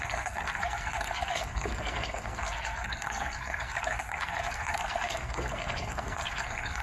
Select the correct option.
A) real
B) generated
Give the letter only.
B